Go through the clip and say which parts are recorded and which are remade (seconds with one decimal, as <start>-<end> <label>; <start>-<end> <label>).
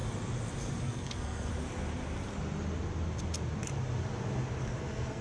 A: 0.0-0.8 recorded; 0.8-1.5 remade; 1.5-4.6 recorded; 4.6-5.2 remade